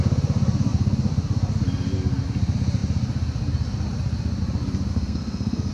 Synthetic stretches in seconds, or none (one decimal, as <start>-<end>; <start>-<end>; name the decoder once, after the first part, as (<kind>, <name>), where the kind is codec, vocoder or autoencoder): 4.9-5.7 (codec, SNAC)